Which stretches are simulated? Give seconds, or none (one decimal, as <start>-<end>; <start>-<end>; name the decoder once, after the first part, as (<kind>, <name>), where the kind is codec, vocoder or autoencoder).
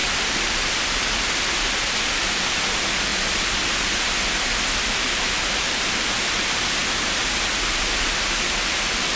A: none